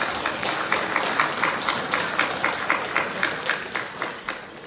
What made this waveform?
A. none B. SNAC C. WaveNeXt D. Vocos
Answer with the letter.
A